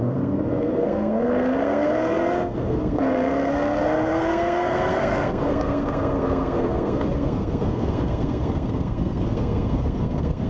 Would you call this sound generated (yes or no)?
yes